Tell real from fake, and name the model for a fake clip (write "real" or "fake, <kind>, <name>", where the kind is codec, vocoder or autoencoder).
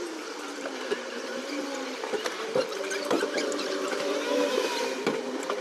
fake, vocoder, BigVGAN v2